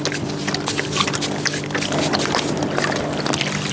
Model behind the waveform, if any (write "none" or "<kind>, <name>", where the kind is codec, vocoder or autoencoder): none